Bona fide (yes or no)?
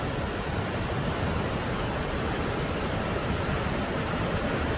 no